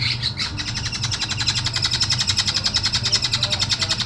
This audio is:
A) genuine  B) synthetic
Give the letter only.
A